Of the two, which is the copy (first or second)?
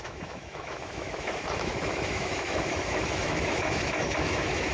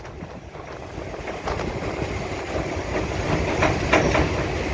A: first